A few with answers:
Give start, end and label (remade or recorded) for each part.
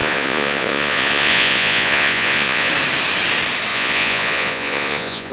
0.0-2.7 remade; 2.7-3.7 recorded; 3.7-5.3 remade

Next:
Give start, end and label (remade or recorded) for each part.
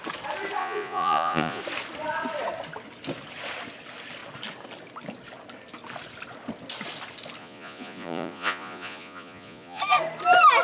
0.0-0.6 recorded; 0.6-1.6 remade; 1.6-7.4 recorded; 7.4-9.8 remade; 9.8-10.6 recorded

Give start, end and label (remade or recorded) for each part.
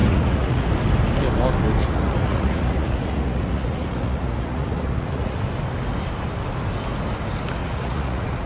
0.0-0.7 remade; 0.7-1.8 recorded; 1.8-5.4 remade; 5.4-7.6 recorded; 7.6-8.5 remade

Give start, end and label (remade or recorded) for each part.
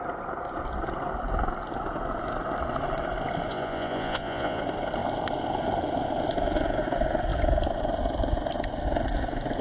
0.0-3.5 recorded; 3.5-4.6 remade; 4.6-9.6 recorded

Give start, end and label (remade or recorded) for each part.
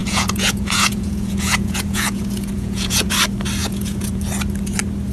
0.0-3.1 remade; 3.1-3.6 recorded; 3.6-4.2 remade; 4.2-5.1 recorded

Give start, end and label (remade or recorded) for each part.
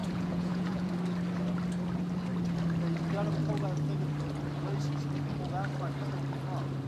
0.0-0.9 remade; 0.9-6.9 recorded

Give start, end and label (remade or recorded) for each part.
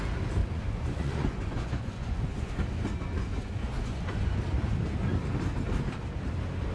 0.0-0.4 recorded; 0.4-4.4 remade; 4.4-6.7 recorded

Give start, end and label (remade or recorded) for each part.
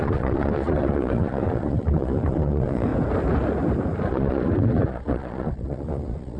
0.0-2.9 remade; 2.9-4.1 recorded; 4.1-6.4 remade